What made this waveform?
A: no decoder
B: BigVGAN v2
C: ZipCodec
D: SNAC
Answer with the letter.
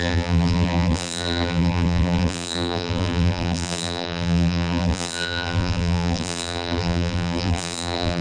B